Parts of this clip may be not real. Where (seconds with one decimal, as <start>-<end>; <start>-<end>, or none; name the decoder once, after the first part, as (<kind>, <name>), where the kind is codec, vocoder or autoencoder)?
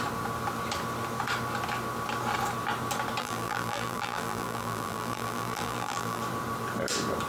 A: 3.2-6.2 (vocoder, BigVGAN v2)